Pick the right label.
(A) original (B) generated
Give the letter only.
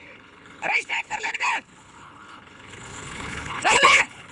B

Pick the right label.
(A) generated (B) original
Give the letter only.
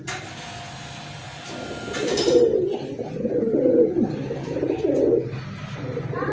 B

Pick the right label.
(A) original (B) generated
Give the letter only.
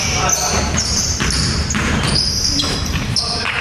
B